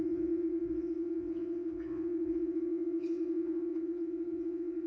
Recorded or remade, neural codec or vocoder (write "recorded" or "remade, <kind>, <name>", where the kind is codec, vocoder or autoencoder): remade, vocoder, WaveNeXt